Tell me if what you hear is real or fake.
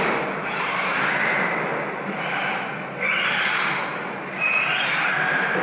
real